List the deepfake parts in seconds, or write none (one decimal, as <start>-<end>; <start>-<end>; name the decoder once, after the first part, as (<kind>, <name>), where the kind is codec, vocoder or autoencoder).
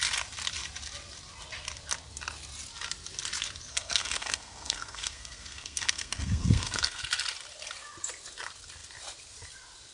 3.7-7.0 (codec, SNAC)